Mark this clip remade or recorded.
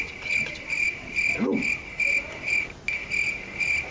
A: recorded